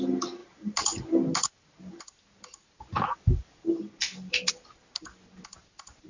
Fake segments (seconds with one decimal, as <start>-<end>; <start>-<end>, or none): none